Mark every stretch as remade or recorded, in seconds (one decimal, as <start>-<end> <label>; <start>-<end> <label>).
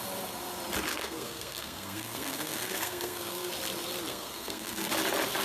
0.0-0.9 recorded; 0.9-3.5 remade; 3.5-4.1 recorded; 4.1-4.9 remade; 4.9-5.4 recorded